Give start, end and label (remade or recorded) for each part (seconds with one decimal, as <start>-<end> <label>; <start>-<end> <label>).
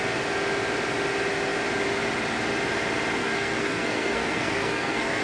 0.0-3.2 recorded; 3.2-5.2 remade